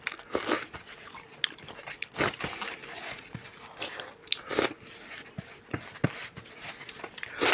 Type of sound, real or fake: real